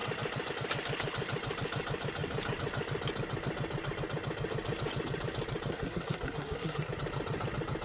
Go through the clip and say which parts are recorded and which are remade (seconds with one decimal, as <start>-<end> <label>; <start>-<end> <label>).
0.0-5.7 recorded; 5.7-6.9 remade; 6.9-7.8 recorded